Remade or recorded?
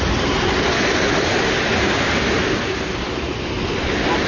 recorded